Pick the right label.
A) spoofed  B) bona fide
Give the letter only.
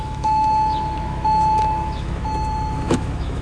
A